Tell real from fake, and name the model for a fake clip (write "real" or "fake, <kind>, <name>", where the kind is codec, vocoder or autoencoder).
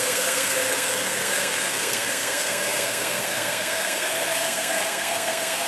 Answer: fake, codec, SNAC